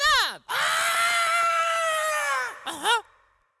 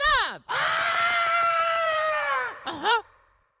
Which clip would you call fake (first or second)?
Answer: second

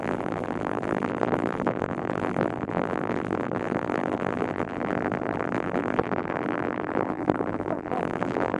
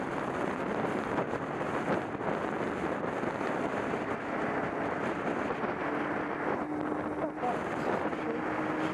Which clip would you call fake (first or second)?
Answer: first